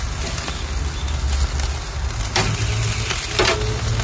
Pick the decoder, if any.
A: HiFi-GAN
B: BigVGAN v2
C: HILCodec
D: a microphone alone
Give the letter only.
D